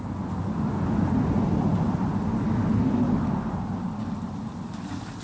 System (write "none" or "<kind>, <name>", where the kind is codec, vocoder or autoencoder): none